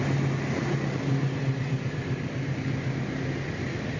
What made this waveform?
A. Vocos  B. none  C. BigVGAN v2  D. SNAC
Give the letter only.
B